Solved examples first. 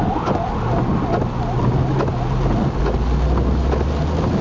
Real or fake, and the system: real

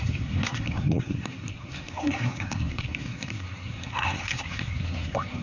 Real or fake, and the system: fake, codec, SNAC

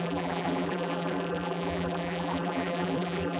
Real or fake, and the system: fake, vocoder, BigVGAN v2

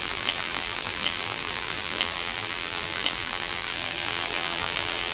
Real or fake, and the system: fake, vocoder, BigVGAN v2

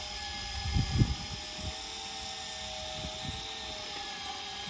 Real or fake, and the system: real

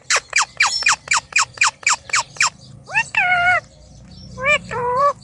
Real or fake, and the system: fake, vocoder, BigVGAN v2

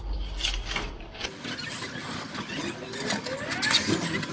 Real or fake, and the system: real